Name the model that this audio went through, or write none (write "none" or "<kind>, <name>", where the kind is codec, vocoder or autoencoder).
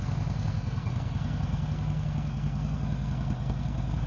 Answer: codec, SNAC